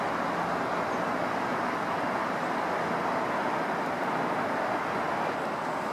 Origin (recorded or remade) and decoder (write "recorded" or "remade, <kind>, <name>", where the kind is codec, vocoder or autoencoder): recorded